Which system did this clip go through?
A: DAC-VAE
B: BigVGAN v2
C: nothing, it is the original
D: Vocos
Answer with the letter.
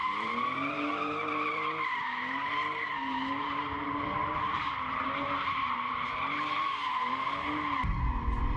B